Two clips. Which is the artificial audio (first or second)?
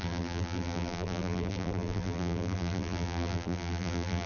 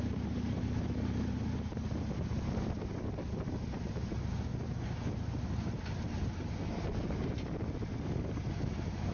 first